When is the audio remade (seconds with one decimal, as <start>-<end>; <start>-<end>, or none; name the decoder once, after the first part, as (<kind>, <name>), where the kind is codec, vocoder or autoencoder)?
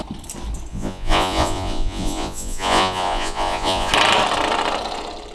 0.7-3.9 (vocoder, Vocos)